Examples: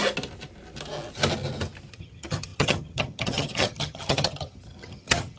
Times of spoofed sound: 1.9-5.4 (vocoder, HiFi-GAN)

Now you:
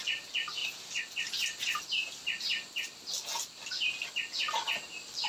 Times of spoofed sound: none

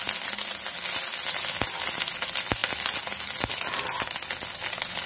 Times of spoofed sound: none

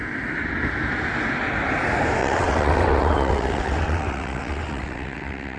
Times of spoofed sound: 2.2-5.6 (vocoder, WaveNeXt)

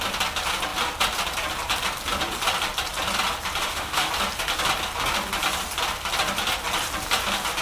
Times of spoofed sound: 3.6-4.1 (autoencoder, DAC-VAE)